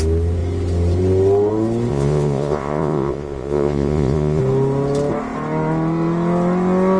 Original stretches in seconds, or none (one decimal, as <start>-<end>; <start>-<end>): 0.0-1.9; 4.4-7.0